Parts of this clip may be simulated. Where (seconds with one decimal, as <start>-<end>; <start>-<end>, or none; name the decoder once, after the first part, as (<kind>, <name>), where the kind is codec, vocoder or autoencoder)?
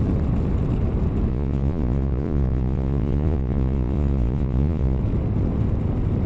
1.3-5.0 (vocoder, Vocos)